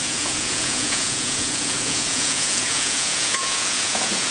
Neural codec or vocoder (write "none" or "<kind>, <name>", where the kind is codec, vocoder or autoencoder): vocoder, Vocos